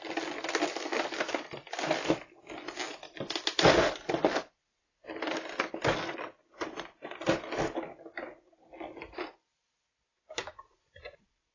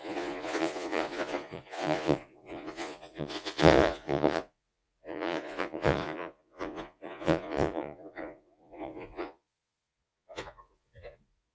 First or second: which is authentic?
first